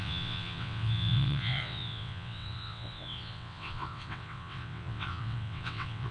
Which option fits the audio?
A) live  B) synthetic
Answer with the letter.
B